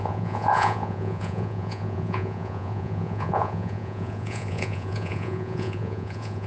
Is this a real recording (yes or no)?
no